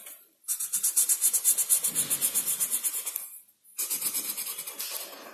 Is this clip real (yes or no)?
yes